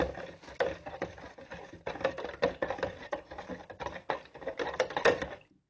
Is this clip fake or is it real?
real